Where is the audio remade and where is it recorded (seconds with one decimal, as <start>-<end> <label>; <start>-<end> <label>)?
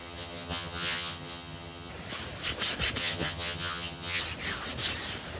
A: 0.0-1.9 remade; 1.9-3.0 recorded; 3.0-4.2 remade; 4.2-5.4 recorded